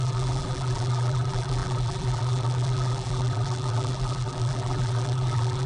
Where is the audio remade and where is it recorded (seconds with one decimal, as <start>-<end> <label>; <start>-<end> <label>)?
0.0-5.7 remade